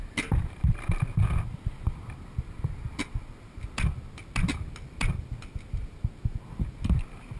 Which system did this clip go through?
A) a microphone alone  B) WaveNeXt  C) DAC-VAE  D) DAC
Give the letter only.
A